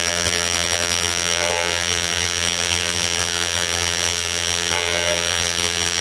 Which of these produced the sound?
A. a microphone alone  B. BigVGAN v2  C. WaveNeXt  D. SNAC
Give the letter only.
B